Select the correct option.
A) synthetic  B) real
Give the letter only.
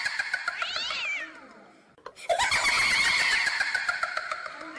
B